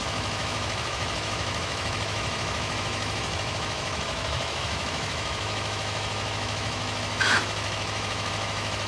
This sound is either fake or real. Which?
fake